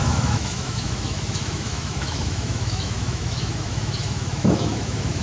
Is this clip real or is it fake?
fake